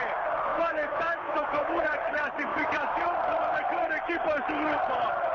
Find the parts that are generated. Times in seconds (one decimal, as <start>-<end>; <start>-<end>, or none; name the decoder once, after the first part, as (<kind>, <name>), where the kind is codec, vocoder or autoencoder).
0.5-1.8 (autoencoder, DAC-VAE); 2.5-3.0